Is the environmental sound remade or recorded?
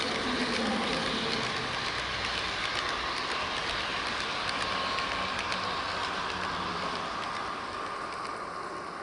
recorded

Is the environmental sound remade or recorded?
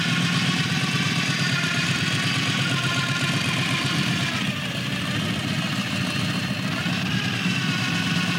recorded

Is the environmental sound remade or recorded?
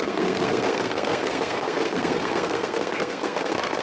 remade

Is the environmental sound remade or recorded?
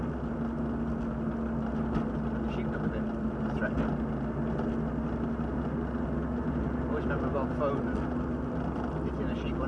recorded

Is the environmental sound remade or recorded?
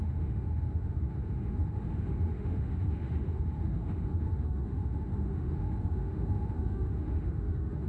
remade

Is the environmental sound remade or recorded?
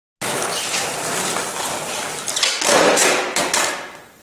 recorded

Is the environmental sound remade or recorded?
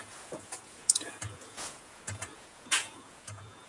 remade